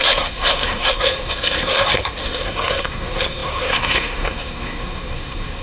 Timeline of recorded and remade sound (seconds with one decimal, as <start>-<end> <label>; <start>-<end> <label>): 0.0-5.6 remade